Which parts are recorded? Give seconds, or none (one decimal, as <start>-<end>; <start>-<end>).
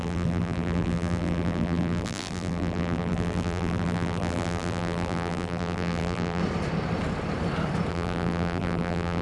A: 6.4-7.9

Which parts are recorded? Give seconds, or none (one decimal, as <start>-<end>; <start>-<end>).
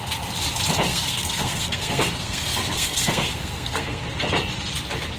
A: 0.0-0.9; 4.0-5.2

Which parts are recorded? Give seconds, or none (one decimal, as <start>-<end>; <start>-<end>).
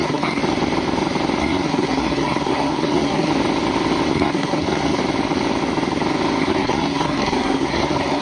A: 0.4-1.4; 3.3-4.1; 5.0-6.4